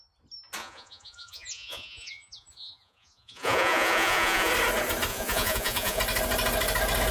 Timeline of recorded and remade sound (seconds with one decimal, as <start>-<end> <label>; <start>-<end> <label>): 0.0-0.6 recorded; 0.6-4.5 remade; 4.5-5.1 recorded; 5.1-6.0 remade; 6.0-7.1 recorded